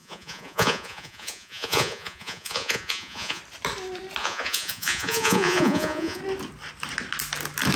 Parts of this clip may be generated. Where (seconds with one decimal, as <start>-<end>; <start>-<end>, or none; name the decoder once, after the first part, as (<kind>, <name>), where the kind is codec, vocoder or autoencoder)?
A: 0.0-3.4 (vocoder, Vocos); 4.2-6.2